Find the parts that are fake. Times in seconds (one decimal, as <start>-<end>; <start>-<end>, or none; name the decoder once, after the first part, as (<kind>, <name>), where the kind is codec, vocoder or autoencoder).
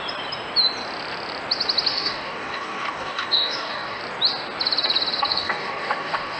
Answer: 1.9-4.0 (codec, DAC); 5.3-6.4